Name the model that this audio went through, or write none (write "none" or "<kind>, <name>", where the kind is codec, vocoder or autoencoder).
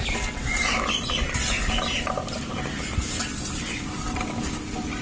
none